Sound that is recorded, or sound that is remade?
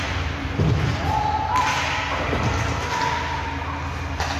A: recorded